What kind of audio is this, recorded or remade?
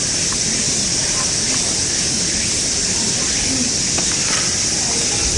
recorded